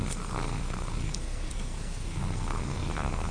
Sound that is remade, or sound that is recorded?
remade